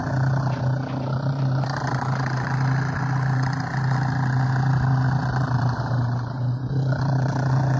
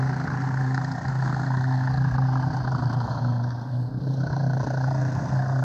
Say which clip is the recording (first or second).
first